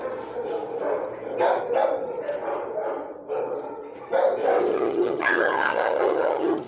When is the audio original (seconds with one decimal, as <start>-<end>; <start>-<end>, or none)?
0.0-4.7